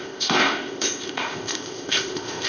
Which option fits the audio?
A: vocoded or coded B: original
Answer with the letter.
A